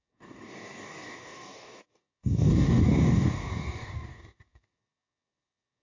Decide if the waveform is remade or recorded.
remade